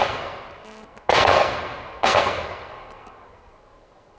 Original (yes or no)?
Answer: no